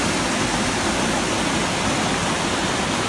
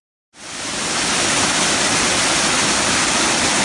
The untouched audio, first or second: first